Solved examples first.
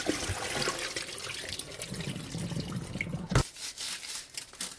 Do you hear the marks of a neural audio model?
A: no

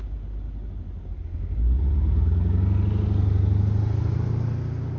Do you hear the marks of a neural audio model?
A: no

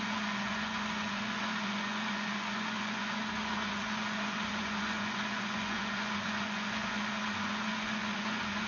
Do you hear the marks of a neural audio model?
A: yes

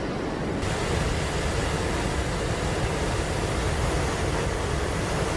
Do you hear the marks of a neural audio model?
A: no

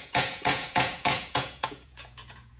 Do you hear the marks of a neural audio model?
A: yes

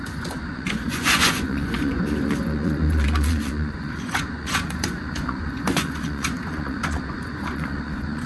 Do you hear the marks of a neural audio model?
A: yes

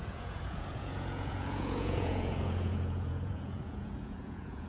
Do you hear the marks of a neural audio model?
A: yes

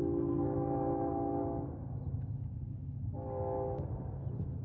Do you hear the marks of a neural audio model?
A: no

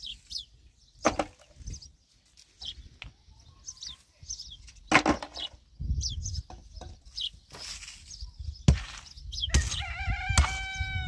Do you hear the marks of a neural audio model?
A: no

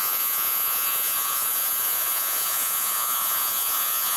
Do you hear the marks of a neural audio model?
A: yes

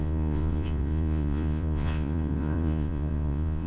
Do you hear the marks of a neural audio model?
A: yes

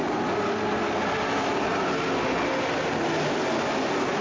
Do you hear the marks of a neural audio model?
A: no